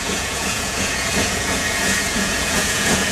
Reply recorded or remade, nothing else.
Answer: remade